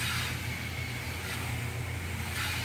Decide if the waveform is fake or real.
real